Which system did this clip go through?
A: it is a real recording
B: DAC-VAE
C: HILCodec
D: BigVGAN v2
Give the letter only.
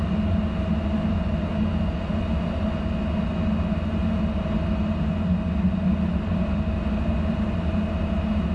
A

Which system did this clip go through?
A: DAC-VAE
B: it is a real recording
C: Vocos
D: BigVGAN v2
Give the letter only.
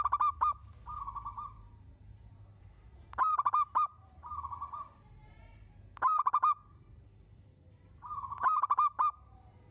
D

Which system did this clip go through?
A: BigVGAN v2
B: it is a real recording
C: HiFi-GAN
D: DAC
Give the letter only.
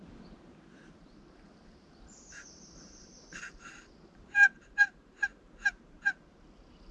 A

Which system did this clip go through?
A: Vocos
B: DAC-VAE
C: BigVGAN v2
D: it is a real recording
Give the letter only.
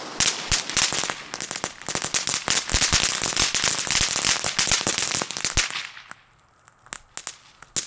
D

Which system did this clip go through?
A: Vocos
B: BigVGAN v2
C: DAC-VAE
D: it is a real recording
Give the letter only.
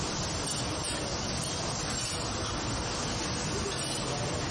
D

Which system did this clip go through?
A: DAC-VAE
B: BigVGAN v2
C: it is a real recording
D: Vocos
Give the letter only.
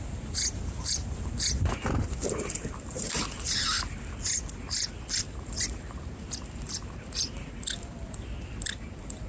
B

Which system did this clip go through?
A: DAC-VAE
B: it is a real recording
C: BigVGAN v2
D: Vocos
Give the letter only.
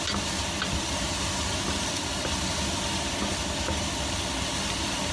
B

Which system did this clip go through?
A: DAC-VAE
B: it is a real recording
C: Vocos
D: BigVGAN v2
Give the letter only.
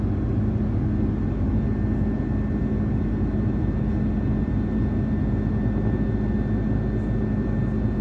B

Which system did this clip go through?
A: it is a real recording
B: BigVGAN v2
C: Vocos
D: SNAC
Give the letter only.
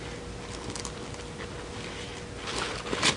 A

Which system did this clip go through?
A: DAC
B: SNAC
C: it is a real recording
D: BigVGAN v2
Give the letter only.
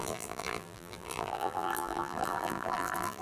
D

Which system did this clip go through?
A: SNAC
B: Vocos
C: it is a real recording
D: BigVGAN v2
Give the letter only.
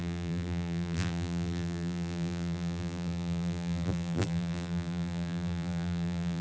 D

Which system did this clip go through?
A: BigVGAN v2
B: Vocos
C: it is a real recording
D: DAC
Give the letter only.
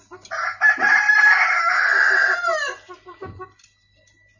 C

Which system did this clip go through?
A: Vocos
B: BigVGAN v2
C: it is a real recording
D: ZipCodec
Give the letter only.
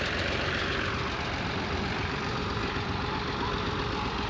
B